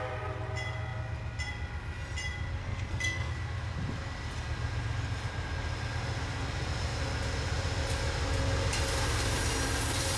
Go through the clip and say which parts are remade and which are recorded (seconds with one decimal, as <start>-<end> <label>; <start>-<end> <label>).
0.0-2.6 recorded; 2.6-3.3 remade; 3.3-10.2 recorded